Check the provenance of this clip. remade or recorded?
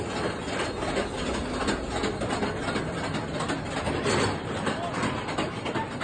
recorded